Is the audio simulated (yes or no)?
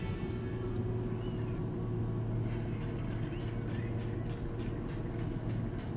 no